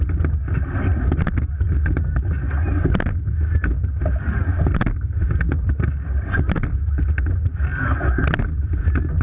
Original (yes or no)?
yes